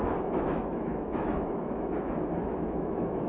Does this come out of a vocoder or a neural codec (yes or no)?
yes